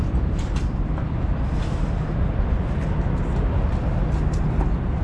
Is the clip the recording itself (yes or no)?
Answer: yes